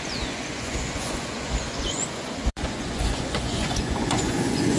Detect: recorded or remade remade